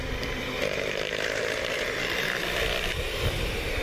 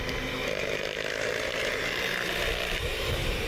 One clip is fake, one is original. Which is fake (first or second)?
first